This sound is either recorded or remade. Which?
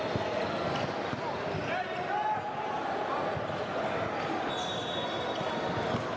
recorded